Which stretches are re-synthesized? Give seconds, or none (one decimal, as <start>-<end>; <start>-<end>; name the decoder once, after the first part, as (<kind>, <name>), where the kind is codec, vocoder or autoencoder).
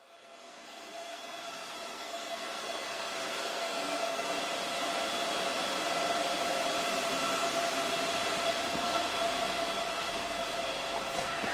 0.0-4.4 (codec, SNAC); 8.7-9.1; 9.9-10.4; 11.1-11.5